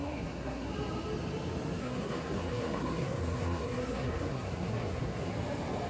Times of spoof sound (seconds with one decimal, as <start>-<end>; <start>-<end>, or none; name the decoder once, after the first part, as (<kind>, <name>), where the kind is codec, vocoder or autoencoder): 0.0-0.7 (codec, SNAC); 1.8-5.3